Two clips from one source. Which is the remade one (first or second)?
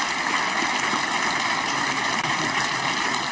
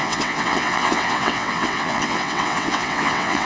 second